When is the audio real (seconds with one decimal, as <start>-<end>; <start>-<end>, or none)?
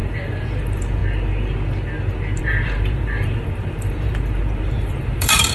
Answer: 1.0-2.4